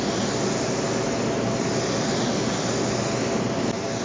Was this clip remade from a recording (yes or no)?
no